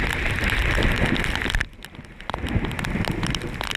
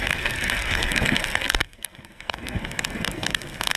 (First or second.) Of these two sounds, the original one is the first